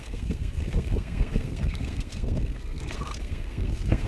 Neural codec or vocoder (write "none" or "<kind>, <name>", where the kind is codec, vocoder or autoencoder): codec, SNAC